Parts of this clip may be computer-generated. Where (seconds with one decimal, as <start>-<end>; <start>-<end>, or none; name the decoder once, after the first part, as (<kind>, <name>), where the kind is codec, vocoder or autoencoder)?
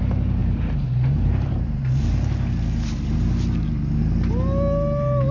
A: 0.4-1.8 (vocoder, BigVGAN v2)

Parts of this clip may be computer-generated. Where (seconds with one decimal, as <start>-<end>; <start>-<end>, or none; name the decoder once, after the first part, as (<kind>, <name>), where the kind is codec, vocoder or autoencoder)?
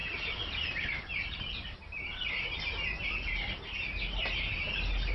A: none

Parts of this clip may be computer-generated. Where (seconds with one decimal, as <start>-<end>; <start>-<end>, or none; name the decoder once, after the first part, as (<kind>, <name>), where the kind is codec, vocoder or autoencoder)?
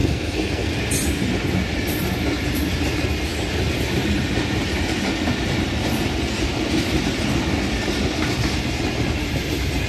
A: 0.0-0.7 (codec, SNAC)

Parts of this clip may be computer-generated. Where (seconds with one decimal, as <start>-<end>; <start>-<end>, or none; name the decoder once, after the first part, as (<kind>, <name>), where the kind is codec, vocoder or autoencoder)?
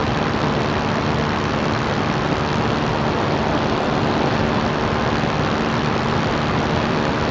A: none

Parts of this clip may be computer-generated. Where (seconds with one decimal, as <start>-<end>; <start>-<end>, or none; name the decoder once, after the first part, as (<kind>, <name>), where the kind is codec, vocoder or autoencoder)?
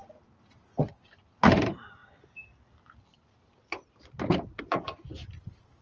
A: none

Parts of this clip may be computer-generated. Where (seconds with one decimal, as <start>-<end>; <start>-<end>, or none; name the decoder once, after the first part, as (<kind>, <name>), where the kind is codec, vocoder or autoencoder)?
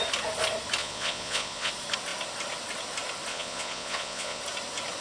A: 0.8-1.7 (vocoder, Vocos); 3.3-4.4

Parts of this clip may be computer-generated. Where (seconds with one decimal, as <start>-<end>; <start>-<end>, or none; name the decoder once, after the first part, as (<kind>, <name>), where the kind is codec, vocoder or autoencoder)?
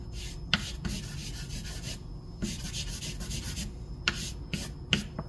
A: none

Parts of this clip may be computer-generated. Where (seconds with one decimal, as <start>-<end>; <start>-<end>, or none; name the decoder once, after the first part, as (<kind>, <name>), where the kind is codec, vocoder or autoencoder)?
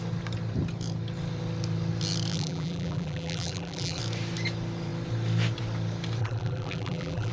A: 2.3-4.0 (vocoder, BigVGAN v2); 6.2-7.3